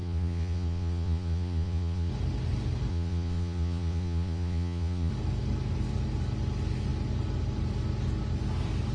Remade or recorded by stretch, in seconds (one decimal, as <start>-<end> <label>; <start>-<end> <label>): 0.0-2.1 remade; 2.1-2.9 recorded; 2.9-5.1 remade; 5.1-8.9 recorded